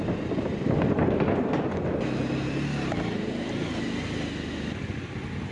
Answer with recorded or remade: recorded